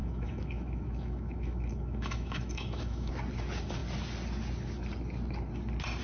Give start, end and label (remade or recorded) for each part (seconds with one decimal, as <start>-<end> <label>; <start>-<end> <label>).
0.0-3.1 remade; 3.1-6.0 recorded